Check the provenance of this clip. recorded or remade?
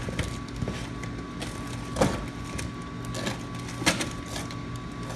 recorded